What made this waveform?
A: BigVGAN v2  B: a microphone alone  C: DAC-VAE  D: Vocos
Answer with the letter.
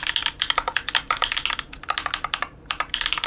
B